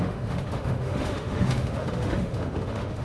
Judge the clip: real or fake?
fake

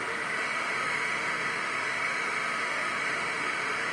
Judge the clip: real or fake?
fake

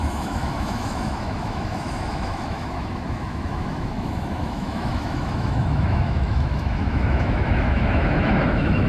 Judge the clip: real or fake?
fake